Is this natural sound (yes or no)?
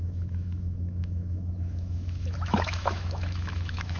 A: no